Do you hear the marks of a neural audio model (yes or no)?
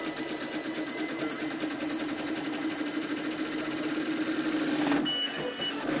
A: no